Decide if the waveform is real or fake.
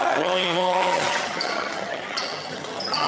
fake